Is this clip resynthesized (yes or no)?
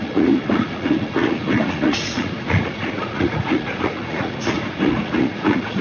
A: yes